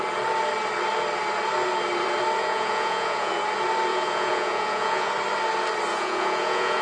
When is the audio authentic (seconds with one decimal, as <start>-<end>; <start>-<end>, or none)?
0.0-2.4; 3.3-3.9; 5.1-5.9